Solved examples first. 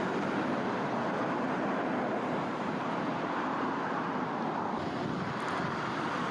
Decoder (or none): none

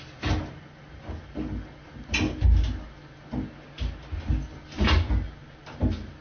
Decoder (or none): none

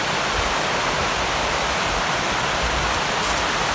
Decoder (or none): none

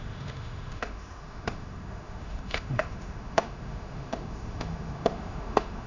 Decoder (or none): autoencoder, DAC-VAE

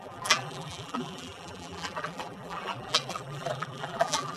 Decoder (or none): vocoder, BigVGAN v2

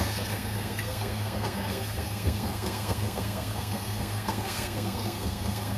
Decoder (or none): codec, SNAC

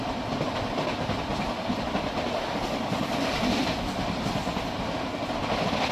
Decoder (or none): none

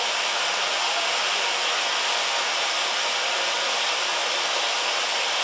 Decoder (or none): none